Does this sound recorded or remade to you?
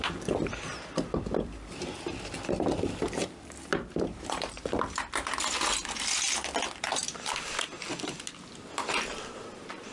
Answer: recorded